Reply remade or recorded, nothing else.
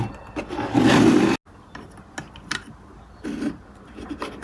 recorded